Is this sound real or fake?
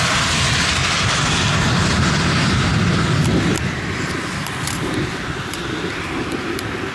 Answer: real